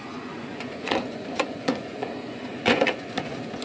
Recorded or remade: remade